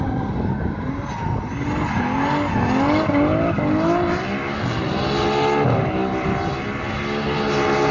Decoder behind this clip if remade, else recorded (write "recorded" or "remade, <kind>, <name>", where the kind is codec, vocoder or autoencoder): recorded